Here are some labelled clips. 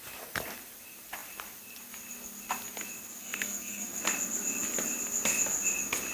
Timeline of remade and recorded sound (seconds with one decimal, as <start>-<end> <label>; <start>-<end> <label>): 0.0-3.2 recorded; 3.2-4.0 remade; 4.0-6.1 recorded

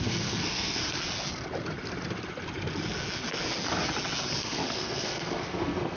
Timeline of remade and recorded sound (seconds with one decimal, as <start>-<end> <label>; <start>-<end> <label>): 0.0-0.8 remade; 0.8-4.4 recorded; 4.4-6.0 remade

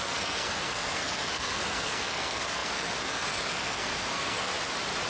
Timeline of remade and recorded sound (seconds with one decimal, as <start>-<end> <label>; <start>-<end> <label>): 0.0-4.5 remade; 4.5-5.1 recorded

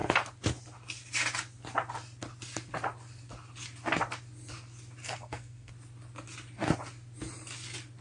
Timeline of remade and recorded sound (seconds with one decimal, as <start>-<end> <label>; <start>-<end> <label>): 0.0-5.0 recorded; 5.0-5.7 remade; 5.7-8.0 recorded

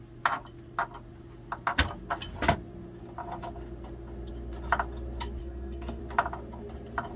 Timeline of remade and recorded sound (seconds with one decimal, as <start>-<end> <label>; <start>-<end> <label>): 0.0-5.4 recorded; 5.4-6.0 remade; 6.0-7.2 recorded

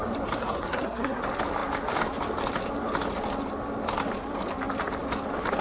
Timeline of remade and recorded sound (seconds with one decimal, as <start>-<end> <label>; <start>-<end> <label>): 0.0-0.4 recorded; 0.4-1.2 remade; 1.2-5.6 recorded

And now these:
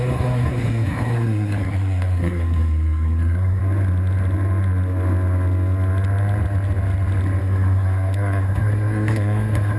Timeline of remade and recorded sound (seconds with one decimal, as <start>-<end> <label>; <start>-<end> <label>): 0.0-3.6 remade; 3.6-7.4 recorded; 7.4-9.8 remade

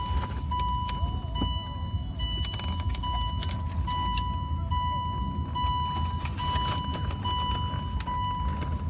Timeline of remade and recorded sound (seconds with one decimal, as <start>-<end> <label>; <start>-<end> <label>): 0.0-8.9 recorded